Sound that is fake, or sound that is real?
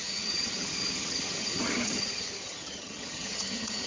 fake